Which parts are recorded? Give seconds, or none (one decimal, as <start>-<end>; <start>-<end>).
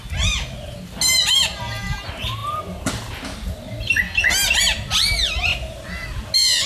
0.0-6.7